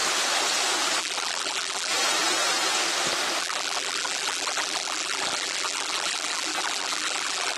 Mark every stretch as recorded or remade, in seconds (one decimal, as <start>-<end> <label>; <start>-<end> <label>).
0.0-1.0 recorded; 1.0-1.9 remade; 1.9-3.4 recorded; 3.4-7.6 remade